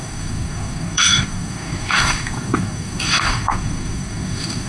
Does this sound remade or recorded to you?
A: remade